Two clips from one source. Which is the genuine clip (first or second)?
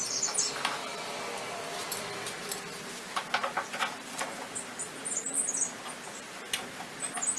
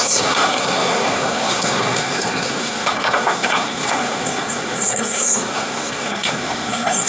first